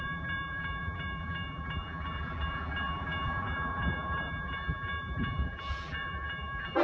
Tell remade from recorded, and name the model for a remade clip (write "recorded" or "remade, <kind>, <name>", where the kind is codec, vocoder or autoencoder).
remade, vocoder, BigVGAN v2